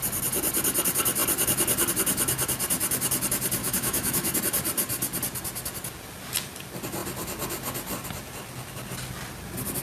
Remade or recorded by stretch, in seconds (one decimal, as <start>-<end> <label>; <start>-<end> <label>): 0.0-3.6 recorded; 3.6-4.4 remade; 4.4-9.8 recorded